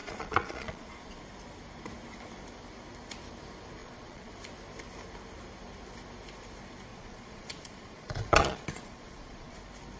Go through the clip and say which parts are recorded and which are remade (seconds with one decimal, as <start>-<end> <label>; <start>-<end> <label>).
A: 0.0-1.2 remade; 1.2-3.8 recorded; 3.8-4.3 remade; 4.3-6.9 recorded; 6.9-9.6 remade; 9.6-10.0 recorded